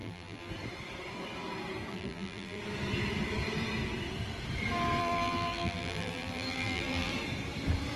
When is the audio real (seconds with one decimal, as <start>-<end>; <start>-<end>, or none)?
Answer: 0.5-1.9; 2.6-5.0; 7.1-8.0